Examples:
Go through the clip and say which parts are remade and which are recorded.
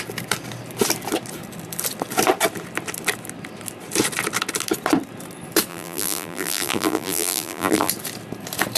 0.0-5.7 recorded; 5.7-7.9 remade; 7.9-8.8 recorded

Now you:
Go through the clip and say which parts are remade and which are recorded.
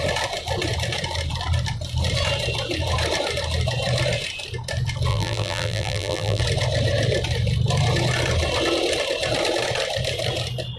0.0-5.1 recorded; 5.1-6.4 remade; 6.4-10.8 recorded